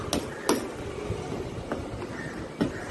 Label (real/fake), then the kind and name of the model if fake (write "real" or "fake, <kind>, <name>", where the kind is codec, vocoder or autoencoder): real